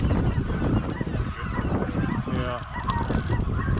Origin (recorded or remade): recorded